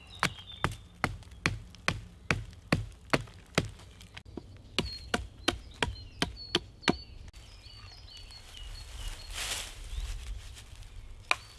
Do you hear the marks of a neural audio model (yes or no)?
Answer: no